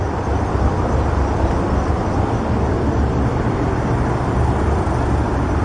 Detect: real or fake fake